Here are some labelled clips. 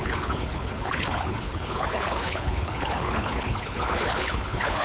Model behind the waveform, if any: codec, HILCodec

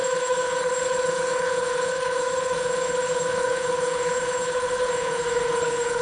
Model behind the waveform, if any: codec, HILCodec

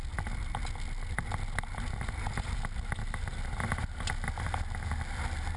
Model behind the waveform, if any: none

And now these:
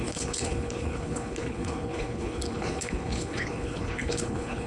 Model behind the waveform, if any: codec, HILCodec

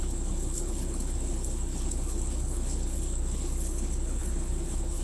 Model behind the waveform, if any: codec, HILCodec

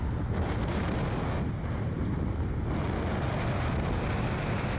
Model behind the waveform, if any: none